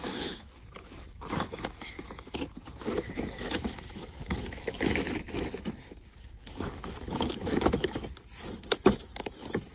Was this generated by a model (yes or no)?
yes